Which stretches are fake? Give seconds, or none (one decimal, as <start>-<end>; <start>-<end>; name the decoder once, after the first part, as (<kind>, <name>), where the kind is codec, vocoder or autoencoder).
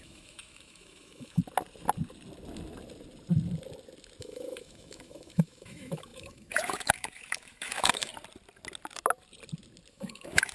0.0-1.4 (autoencoder, DAC-VAE); 4.2-8.1; 9.9-10.5